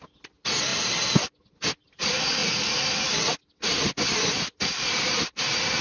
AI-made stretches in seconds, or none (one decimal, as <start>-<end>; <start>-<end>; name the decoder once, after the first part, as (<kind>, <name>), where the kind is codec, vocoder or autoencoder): none